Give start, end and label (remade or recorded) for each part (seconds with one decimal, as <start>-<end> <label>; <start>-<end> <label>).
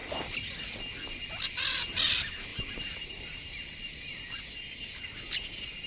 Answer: 0.0-2.5 recorded; 2.5-5.0 remade; 5.0-5.9 recorded